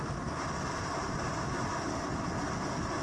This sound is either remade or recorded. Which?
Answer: recorded